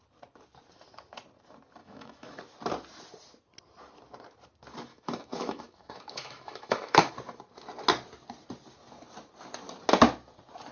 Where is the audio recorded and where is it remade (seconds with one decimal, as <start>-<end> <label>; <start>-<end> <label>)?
0.0-1.8 recorded; 1.8-2.4 remade; 2.4-4.9 recorded; 4.9-7.1 remade; 7.1-10.7 recorded